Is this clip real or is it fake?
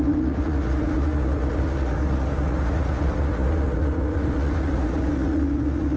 fake